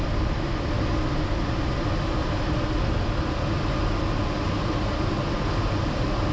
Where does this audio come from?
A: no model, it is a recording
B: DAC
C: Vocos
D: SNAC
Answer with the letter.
A